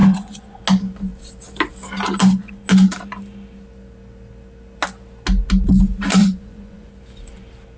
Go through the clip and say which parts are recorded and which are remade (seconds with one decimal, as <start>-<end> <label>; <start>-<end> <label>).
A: 0.0-0.6 remade; 0.6-6.2 recorded; 6.2-6.9 remade; 6.9-7.8 recorded